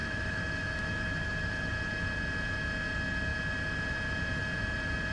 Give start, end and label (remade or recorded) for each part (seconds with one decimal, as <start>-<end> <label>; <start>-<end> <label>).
0.0-1.7 remade; 1.7-5.1 recorded